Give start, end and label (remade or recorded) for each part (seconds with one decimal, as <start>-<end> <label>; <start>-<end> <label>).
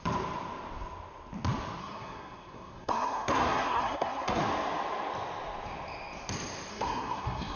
0.0-1.8 recorded; 1.8-4.4 remade; 4.4-6.7 recorded; 6.7-7.6 remade